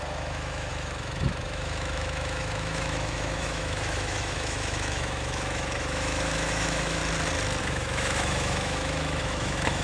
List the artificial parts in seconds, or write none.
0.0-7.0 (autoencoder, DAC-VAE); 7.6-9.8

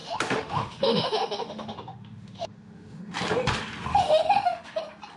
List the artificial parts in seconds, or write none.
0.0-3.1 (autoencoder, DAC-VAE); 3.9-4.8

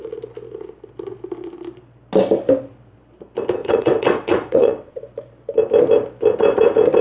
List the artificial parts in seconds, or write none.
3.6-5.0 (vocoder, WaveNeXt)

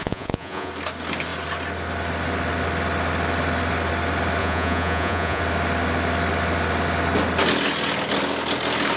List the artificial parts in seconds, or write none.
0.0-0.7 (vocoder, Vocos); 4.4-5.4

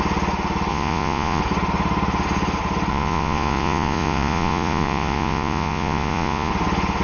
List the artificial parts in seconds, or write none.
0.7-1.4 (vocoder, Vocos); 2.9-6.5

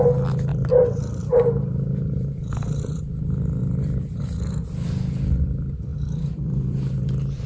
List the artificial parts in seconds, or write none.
0.5-3.0 (vocoder, BigVGAN v2); 3.6-4.2; 5.9-7.0

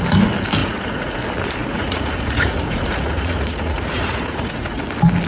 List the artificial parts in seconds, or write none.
0.6-1.2 (vocoder, Vocos); 1.6-4.8